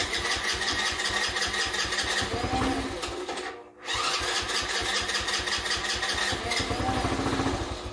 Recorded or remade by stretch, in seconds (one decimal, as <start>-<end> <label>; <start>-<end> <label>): 0.0-1.1 remade; 1.1-7.9 recorded